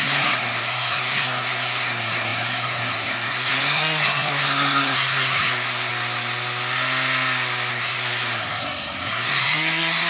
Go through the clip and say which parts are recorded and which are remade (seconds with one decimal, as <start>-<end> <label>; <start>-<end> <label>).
0.0-5.9 remade; 5.9-7.7 recorded; 7.7-10.1 remade